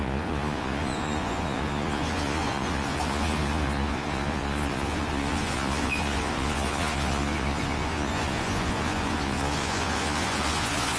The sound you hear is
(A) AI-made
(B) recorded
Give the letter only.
A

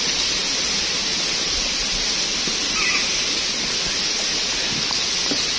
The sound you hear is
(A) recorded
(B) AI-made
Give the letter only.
A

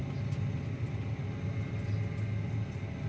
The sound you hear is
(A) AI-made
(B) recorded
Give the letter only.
B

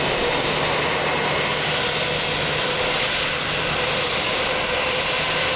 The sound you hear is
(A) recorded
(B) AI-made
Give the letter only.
A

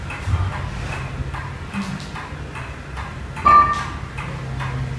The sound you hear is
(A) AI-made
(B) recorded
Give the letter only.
B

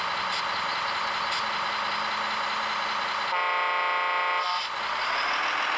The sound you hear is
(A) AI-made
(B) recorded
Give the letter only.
B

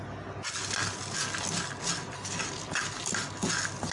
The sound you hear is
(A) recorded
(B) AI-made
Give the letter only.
A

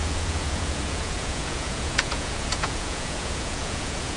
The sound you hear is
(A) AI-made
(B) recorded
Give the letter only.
A